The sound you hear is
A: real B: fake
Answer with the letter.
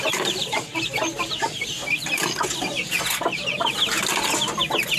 A